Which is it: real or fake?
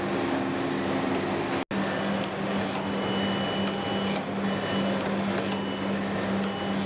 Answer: real